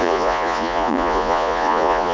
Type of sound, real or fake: fake